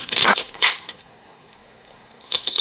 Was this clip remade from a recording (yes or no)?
yes